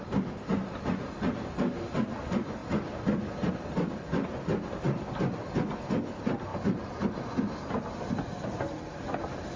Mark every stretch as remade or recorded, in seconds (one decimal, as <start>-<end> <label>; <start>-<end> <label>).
0.0-9.6 recorded